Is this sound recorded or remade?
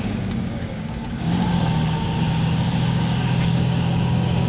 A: remade